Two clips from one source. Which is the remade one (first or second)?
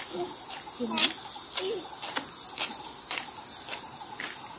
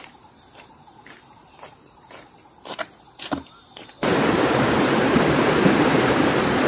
second